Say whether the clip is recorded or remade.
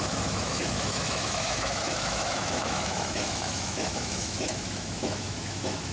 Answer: remade